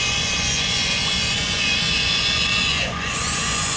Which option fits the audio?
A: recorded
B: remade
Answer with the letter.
B